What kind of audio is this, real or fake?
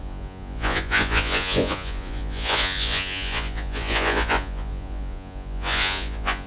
fake